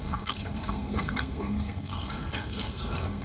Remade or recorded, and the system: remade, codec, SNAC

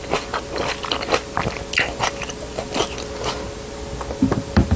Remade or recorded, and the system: recorded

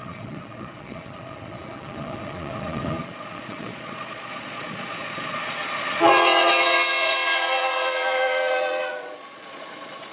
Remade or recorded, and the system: remade, vocoder, Vocos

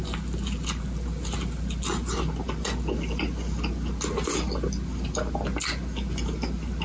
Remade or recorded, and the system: recorded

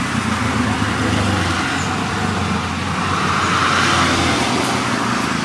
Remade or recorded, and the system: recorded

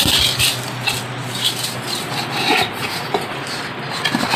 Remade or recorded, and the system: recorded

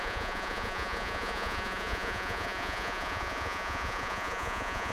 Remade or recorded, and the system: remade, vocoder, Vocos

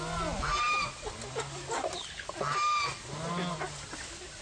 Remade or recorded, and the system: recorded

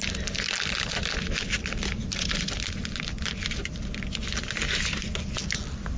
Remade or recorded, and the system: recorded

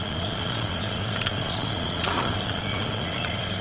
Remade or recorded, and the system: remade, vocoder, Vocos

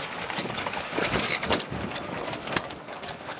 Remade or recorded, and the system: remade, codec, DAC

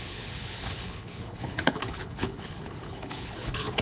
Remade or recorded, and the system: remade, codec, HILCodec